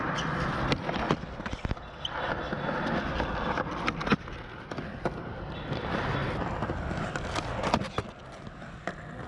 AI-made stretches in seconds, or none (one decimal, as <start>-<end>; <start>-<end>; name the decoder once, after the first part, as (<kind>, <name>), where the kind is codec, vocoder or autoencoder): none